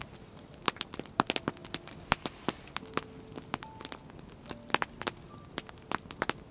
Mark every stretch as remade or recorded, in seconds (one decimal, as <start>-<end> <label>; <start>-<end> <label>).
0.0-6.5 recorded